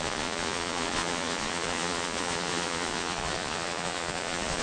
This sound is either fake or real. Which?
fake